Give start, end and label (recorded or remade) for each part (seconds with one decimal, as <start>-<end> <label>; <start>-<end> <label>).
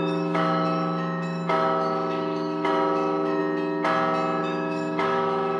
0.0-3.4 remade; 3.4-4.4 recorded; 4.4-5.6 remade